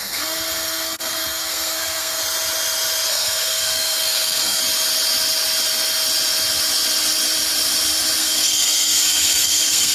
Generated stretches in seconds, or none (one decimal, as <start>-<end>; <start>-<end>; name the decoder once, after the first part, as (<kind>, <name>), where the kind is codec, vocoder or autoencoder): 0.0-2.2 (codec, SNAC); 3.1-4.6; 8.2-9.9